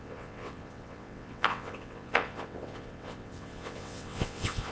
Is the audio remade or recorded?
remade